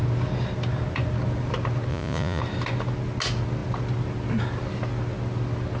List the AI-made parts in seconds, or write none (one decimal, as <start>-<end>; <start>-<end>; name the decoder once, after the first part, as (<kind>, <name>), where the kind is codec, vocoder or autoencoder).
1.9-2.4 (vocoder, Vocos)